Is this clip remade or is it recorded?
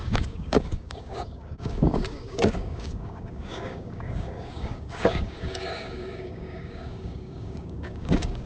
remade